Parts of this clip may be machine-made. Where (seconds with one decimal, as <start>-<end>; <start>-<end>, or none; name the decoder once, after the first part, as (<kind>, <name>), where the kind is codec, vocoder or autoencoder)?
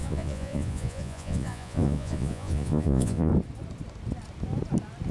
0.0-3.3 (vocoder, Vocos)